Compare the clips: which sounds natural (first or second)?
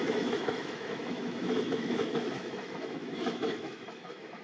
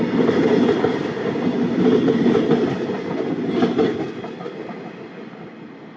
second